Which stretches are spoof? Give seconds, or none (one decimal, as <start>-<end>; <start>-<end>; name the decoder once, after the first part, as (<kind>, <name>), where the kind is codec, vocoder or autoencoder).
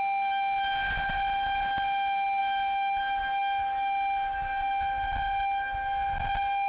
none